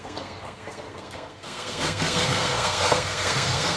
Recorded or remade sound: remade